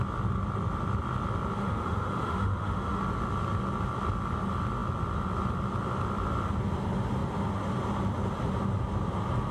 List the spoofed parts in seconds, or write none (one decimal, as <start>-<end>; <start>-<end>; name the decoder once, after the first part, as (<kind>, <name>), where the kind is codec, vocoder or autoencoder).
1.6-3.0 (autoencoder, DAC-VAE)